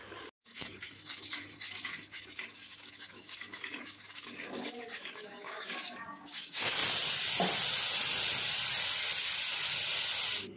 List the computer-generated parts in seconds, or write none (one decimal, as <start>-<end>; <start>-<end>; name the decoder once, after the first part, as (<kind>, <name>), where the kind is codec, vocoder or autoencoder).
0.0-6.8 (codec, DAC)